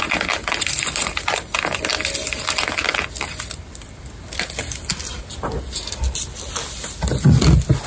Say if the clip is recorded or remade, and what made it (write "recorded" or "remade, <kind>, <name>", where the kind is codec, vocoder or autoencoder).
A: recorded